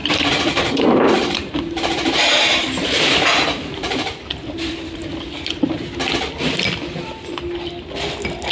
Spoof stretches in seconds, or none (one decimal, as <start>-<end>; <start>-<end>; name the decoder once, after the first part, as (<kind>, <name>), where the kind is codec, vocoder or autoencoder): 0.0-5.1 (vocoder, BigVGAN v2)